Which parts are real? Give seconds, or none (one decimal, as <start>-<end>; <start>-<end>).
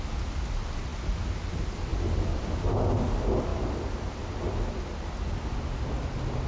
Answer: 0.0-3.5; 4.1-6.5